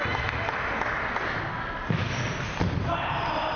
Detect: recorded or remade recorded